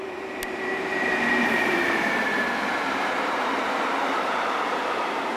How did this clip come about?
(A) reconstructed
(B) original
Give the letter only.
A